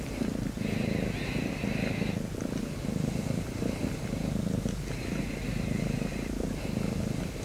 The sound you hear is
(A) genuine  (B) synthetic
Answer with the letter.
A